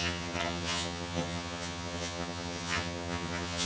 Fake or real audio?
fake